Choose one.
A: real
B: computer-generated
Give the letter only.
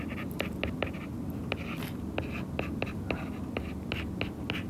A